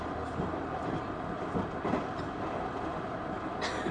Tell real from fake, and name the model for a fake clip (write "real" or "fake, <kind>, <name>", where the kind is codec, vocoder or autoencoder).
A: real